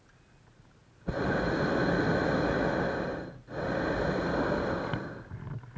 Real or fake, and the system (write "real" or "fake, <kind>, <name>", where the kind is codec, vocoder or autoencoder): real